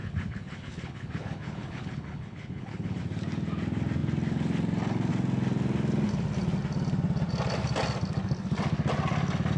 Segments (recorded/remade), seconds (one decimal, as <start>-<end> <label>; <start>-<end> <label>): 0.0-3.0 remade; 3.0-9.6 recorded

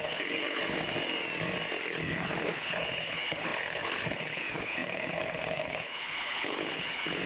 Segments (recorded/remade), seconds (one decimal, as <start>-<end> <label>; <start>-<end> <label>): 0.0-0.6 remade; 0.6-1.8 recorded; 1.8-7.3 remade

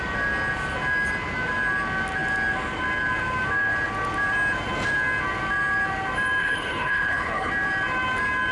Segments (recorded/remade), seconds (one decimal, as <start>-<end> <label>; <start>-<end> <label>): 0.0-6.4 recorded; 6.4-7.5 remade; 7.5-8.5 recorded

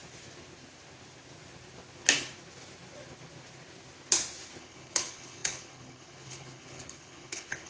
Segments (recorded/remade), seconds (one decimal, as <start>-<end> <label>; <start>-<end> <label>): 0.0-4.6 recorded; 4.6-7.7 remade

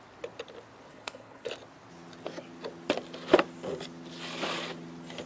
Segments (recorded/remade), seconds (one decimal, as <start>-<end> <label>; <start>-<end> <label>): 0.0-0.9 recorded; 0.9-1.5 remade; 1.5-5.3 recorded

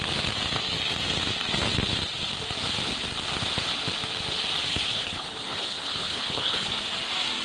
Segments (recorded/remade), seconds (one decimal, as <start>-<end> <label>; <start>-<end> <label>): 0.0-4.7 recorded; 4.7-6.7 remade; 6.7-7.4 recorded

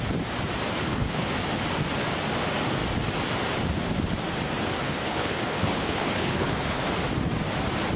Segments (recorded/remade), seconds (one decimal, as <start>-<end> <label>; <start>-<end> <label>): 0.0-0.7 recorded; 0.7-1.3 remade; 1.3-4.8 recorded; 4.8-6.8 remade; 6.8-8.0 recorded